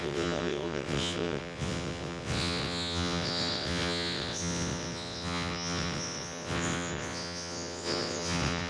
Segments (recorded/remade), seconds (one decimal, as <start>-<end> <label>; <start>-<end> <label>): 0.0-8.7 remade